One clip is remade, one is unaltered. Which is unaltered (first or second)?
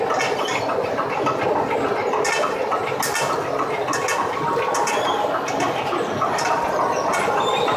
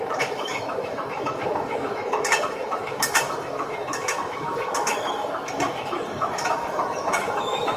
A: first